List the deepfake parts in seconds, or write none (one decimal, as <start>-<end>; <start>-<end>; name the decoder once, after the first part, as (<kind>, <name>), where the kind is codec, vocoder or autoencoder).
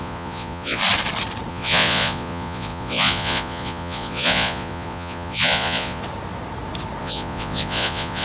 0.0-0.8 (vocoder, Vocos); 1.5-6.0; 7.0-8.2